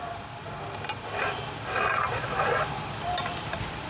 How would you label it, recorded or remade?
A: recorded